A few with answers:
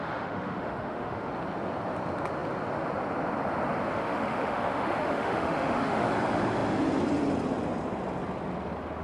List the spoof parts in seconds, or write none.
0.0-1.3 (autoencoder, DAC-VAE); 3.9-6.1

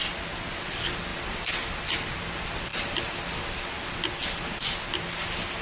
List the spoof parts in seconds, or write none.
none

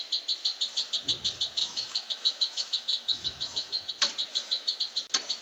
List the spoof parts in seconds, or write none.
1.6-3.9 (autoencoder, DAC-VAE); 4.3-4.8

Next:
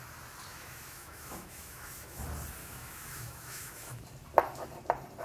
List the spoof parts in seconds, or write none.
0.5-2.2 (autoencoder, DAC-VAE); 2.6-4.0

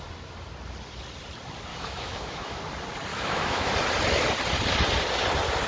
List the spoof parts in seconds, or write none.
1.7-2.6 (autoencoder, DAC-VAE); 3.1-3.7

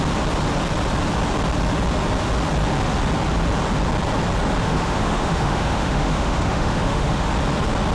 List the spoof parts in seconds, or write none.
4.6-7.3 (autoencoder, DAC-VAE)